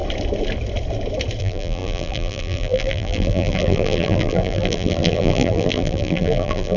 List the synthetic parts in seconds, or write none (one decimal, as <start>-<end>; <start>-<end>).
1.4-6.8